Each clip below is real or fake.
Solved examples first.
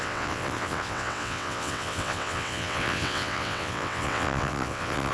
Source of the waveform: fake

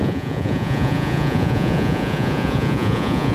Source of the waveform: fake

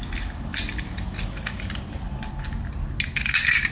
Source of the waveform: real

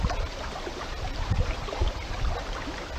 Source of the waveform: real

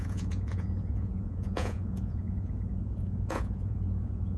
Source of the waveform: fake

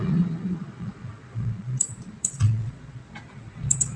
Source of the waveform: fake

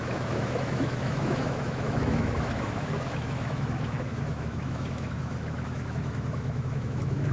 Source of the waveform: fake